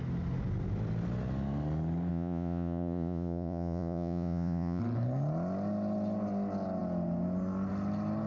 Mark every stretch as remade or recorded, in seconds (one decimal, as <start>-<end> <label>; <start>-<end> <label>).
0.0-2.1 recorded; 2.1-4.8 remade; 4.8-8.3 recorded